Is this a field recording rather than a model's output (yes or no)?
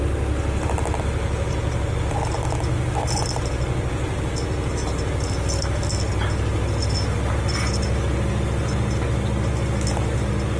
yes